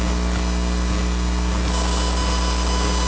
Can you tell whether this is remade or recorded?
recorded